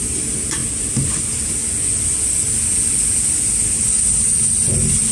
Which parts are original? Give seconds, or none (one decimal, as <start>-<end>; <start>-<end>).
0.0-5.1

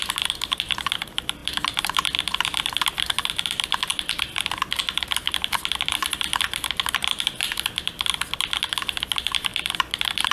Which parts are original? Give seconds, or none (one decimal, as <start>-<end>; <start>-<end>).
none

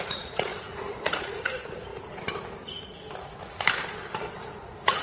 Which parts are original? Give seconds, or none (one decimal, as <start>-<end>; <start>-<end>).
1.9-4.3

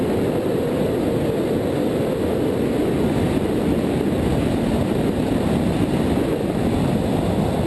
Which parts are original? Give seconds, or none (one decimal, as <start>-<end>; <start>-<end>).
0.0-7.7

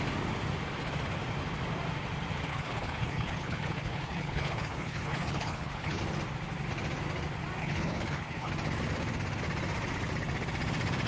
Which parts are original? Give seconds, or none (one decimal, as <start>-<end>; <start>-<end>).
0.0-2.5; 6.0-7.6; 8.5-11.1

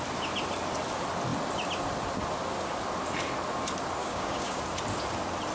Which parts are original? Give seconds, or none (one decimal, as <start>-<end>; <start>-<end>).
0.0-4.0; 4.6-5.5